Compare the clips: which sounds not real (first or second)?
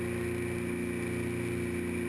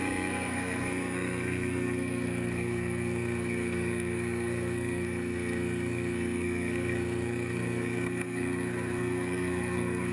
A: second